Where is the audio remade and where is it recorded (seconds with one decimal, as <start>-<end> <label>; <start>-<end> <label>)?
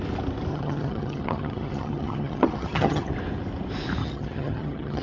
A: 0.0-0.5 recorded; 0.5-3.1 remade; 3.1-4.0 recorded; 4.0-5.0 remade